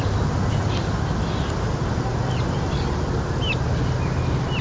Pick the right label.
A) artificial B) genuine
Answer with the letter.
B